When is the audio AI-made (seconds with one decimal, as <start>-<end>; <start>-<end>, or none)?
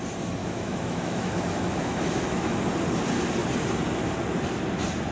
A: 0.4-2.6